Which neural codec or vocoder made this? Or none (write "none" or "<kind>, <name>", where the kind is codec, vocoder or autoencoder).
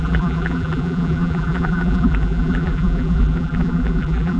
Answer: vocoder, BigVGAN v2